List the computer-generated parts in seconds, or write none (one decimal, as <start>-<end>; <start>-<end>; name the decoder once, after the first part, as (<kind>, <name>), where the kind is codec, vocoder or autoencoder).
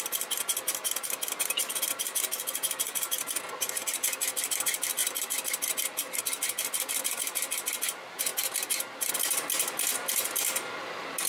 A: none